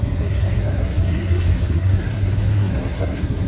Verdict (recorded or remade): remade